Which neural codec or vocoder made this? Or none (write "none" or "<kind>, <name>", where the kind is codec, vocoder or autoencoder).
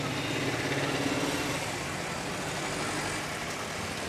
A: none